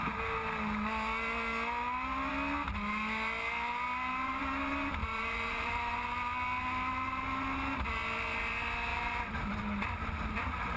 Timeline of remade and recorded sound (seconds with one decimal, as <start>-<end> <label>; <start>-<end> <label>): 0.0-5.0 recorded; 5.0-6.1 remade; 6.1-8.9 recorded; 8.9-9.6 remade; 9.6-10.8 recorded